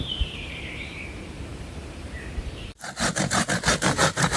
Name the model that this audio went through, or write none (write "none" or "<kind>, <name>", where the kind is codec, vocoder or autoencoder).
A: vocoder, BigVGAN v2